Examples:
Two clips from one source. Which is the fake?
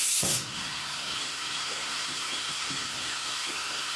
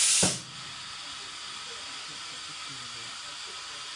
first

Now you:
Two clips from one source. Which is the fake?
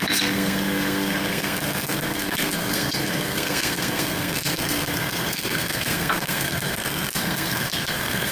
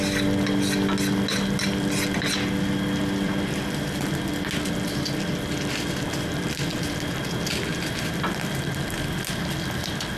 first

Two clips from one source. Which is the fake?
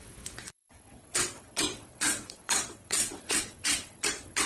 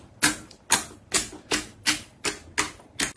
first